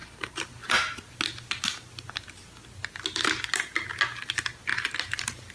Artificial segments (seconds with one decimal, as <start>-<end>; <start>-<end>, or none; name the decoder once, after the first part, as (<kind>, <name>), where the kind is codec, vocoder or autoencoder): none